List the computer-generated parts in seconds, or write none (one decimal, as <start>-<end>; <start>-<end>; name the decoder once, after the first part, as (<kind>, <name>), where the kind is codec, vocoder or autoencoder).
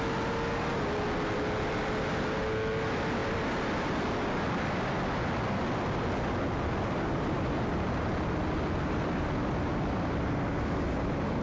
none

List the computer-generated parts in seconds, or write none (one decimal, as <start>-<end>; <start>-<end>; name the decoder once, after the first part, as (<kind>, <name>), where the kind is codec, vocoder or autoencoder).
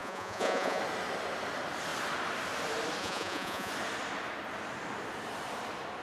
0.0-0.8 (vocoder, Vocos); 3.0-3.7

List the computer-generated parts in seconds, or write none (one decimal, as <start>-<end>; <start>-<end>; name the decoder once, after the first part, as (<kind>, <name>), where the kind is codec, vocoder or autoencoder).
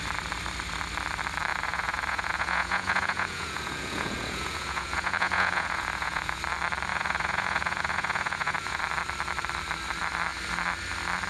1.5-6.4 (vocoder, Vocos); 6.9-8.8